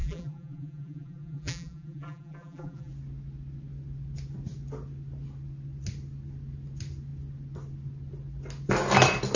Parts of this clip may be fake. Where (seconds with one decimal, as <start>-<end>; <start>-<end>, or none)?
0.0-2.9